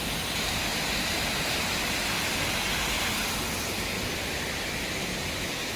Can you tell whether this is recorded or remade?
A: recorded